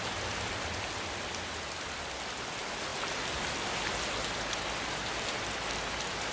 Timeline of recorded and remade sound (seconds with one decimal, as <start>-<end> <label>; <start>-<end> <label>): 0.0-6.3 recorded